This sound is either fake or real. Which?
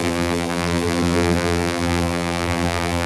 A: fake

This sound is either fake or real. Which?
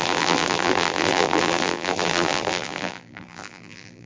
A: fake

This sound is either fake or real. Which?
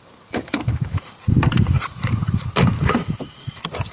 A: fake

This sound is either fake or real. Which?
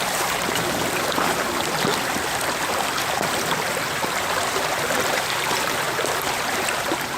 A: fake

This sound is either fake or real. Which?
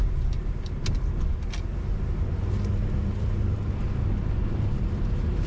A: real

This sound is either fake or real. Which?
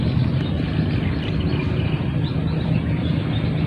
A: real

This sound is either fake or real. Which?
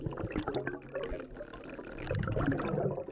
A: real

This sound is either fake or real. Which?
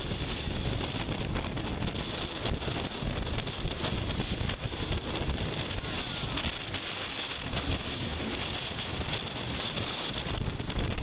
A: real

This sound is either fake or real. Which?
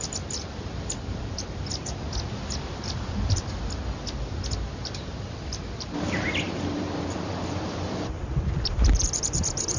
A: fake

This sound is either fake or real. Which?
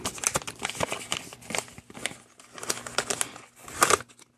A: real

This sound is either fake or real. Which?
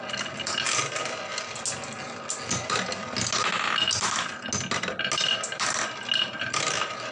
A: real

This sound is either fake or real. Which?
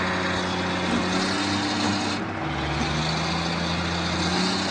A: real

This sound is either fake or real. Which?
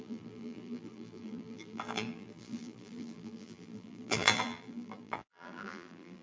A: fake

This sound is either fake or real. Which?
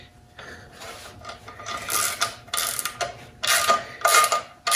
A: real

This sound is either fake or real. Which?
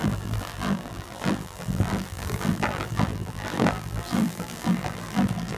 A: fake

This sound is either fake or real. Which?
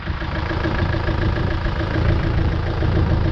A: fake